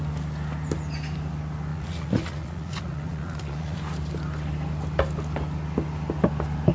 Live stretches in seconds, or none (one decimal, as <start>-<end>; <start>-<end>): 0.0-1.7; 3.8-6.7

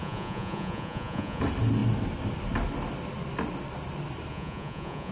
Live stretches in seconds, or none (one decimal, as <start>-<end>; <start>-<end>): 1.4-4.3

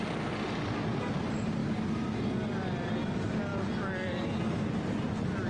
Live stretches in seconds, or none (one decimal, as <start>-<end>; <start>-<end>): 0.0-5.5

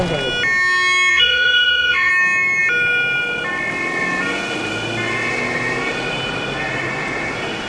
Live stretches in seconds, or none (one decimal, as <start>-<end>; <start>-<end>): 0.0-1.1; 2.1-7.7